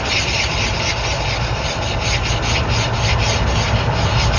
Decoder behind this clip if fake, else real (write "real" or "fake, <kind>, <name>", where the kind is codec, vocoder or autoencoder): real